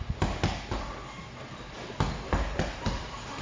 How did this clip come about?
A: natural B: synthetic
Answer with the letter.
A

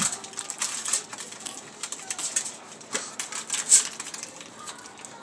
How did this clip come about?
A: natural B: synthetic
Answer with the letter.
A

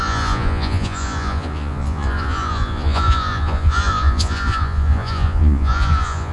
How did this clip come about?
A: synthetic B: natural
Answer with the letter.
A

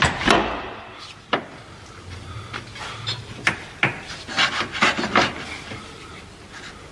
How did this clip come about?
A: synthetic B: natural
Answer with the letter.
B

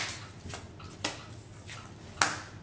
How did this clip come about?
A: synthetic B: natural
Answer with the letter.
B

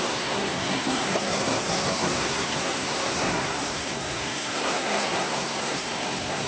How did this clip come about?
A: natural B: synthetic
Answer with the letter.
B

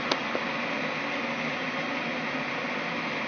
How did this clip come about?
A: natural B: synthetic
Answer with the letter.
A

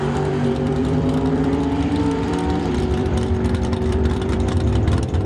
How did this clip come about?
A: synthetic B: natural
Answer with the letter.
A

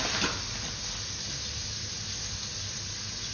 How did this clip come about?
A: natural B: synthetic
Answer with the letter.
A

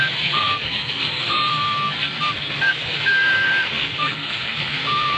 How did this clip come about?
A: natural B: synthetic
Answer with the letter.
B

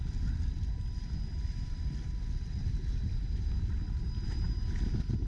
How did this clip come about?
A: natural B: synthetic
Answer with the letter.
A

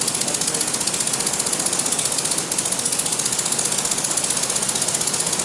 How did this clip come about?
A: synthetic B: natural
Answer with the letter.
B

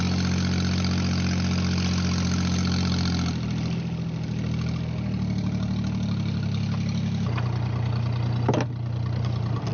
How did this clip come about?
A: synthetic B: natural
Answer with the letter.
B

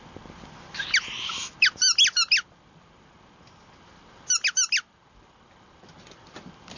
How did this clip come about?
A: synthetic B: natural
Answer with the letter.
B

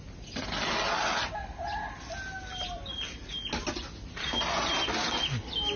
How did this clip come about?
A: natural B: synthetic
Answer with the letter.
A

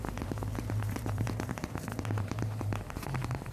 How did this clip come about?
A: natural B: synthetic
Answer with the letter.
B